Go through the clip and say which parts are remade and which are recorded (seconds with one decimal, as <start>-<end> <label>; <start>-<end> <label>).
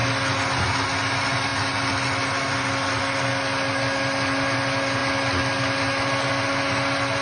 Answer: 0.0-7.2 recorded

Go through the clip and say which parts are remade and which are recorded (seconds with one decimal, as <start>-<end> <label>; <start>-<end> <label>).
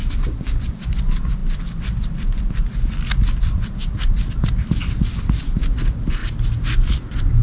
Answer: 0.0-6.2 remade; 6.2-6.9 recorded; 6.9-7.4 remade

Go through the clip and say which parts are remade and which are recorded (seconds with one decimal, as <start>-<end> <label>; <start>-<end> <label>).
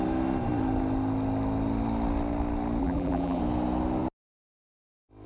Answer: 0.0-2.8 recorded; 2.8-3.4 remade; 3.4-5.3 recorded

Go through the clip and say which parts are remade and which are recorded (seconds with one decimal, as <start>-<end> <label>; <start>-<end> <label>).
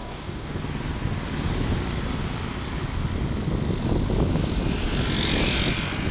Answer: 0.0-0.6 remade; 0.6-6.1 recorded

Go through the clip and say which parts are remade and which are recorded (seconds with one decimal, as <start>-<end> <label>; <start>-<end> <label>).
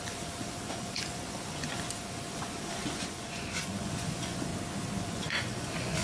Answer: 0.0-4.5 remade; 4.5-5.0 recorded; 5.0-6.0 remade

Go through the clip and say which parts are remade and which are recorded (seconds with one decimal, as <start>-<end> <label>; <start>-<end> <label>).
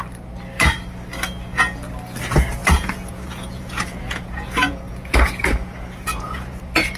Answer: 0.0-2.6 recorded; 2.6-7.0 remade